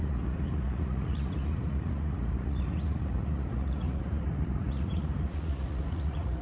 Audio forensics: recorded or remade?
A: remade